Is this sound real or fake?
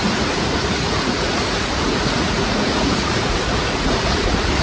fake